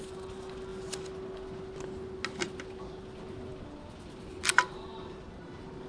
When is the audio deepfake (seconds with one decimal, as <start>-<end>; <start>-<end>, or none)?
none